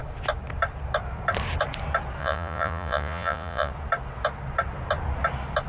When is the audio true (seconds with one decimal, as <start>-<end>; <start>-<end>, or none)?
0.0-2.2; 3.7-5.7